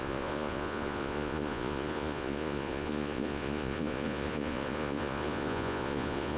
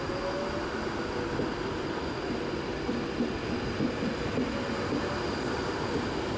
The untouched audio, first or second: second